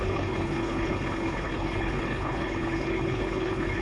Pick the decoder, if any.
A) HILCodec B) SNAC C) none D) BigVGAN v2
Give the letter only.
A